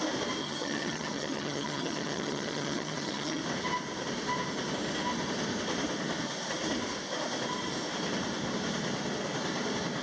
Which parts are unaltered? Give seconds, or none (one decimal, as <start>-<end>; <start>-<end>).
0.0-0.4; 3.4-10.0